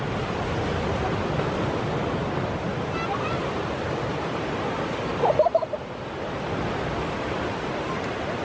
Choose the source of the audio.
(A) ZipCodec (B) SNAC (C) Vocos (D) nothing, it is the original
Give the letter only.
D